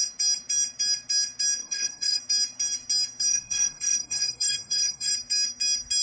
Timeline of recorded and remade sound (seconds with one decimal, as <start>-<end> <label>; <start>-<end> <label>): 0.0-1.6 recorded; 1.6-2.2 remade; 2.2-3.3 recorded; 3.3-5.1 remade; 5.1-6.0 recorded